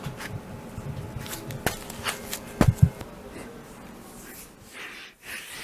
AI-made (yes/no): no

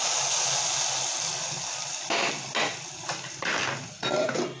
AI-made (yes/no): no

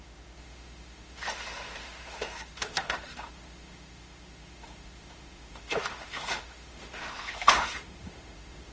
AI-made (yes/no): yes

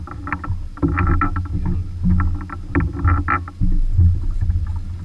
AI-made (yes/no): no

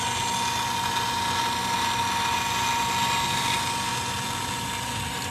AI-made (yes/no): no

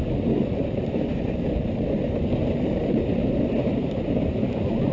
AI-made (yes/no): yes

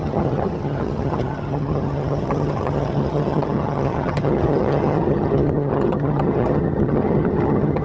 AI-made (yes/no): yes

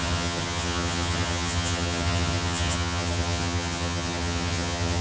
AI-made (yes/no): yes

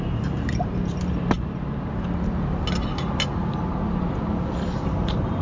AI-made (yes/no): no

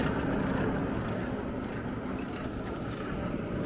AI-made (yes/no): no